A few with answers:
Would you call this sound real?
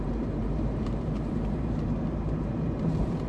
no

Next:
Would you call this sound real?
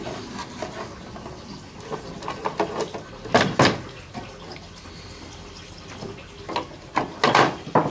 yes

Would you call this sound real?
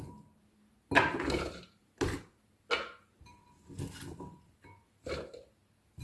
yes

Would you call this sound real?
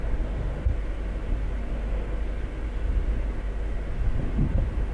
yes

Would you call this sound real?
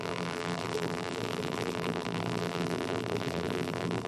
no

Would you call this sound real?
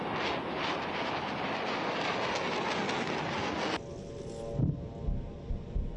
yes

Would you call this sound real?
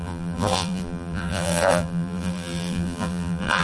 no